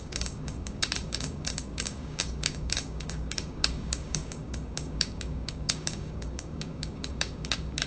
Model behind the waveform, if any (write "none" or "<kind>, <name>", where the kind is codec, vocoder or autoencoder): codec, DAC